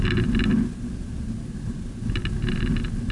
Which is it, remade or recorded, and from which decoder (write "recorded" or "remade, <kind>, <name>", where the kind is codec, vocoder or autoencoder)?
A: recorded